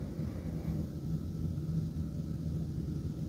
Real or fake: real